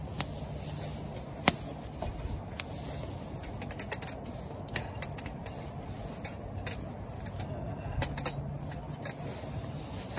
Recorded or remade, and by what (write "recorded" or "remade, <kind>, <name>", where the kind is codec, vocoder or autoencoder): recorded